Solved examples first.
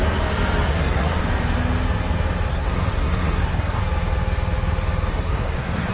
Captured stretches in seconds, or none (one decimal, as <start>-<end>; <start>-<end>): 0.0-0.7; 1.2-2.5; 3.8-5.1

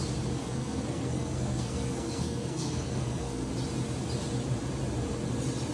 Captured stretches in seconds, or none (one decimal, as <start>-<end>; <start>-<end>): 0.0-0.4; 3.5-5.7

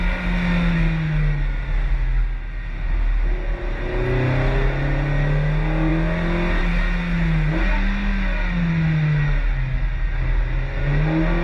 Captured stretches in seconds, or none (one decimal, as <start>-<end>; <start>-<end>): 0.0-11.4